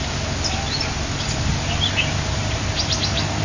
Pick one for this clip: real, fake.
real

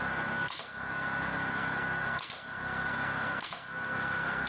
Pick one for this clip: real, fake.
fake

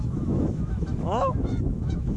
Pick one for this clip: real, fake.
fake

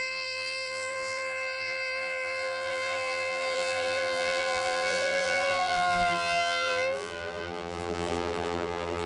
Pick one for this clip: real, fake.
fake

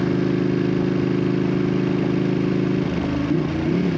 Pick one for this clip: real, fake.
real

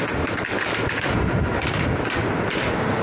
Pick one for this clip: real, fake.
fake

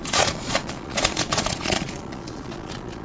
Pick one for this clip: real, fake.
fake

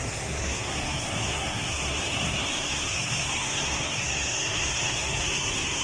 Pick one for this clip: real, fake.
fake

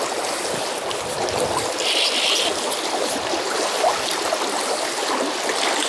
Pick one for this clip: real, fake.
real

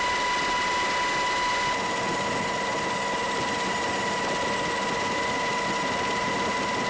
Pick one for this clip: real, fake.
real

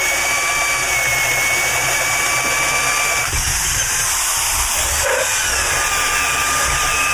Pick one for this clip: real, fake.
real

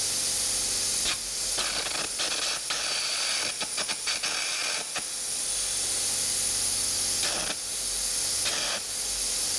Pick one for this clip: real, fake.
real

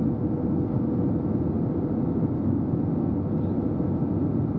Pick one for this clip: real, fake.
real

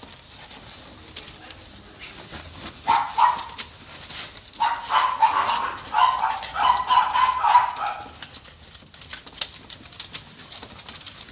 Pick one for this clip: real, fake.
real